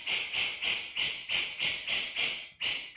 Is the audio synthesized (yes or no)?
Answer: no